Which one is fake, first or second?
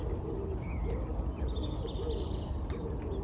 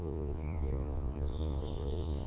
second